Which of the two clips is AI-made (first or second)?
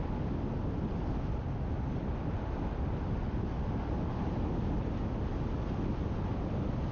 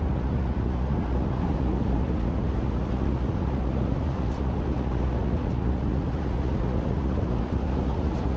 second